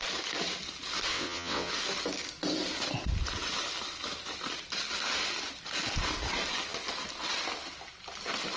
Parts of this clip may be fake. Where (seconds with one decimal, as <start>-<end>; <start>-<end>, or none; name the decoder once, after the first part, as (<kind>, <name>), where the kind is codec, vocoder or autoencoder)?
1.1-1.7 (vocoder, WaveNeXt)